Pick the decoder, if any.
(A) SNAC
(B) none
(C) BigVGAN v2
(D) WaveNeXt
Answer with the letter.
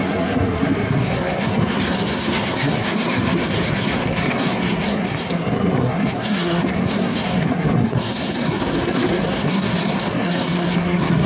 A